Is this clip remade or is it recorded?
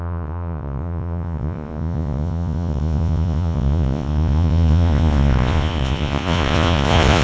remade